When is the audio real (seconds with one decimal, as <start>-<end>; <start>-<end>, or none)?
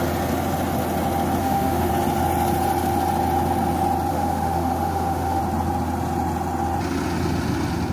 0.0-1.4; 1.9-4.1; 5.4-7.9